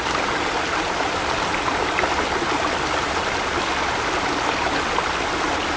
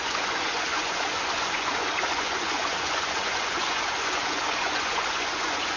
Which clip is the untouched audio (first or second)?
first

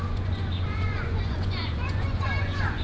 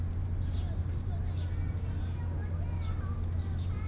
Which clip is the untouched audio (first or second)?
second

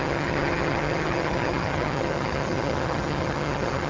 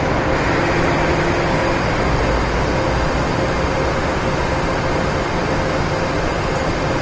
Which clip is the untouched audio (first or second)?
second